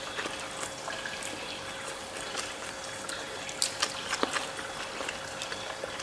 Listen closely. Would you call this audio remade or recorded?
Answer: recorded